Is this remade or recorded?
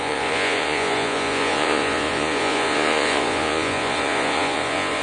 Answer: remade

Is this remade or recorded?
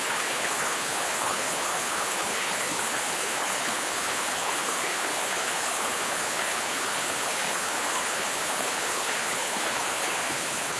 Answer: remade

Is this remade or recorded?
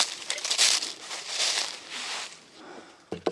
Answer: recorded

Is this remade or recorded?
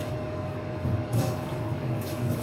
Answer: remade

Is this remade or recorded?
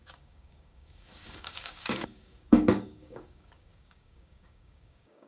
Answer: remade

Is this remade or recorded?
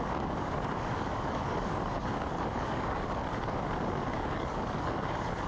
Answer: remade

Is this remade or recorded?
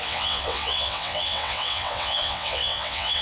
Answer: remade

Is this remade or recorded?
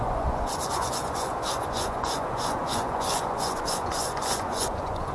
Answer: remade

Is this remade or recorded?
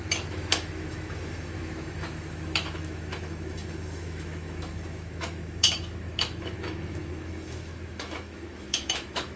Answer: remade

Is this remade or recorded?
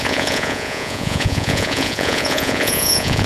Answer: remade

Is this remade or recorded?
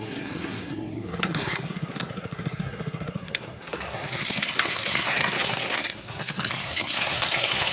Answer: remade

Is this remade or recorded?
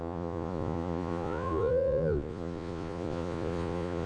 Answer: remade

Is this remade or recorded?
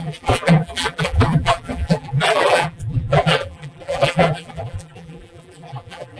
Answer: remade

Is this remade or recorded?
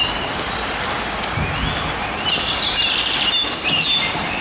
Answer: recorded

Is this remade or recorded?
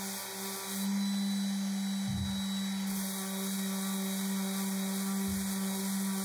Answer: recorded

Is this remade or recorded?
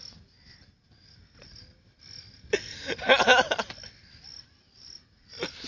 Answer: recorded